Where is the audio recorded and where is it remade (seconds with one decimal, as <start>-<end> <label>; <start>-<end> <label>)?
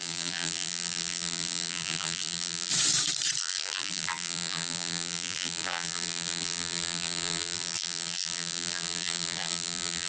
0.0-2.7 remade; 2.7-3.4 recorded; 3.4-10.1 remade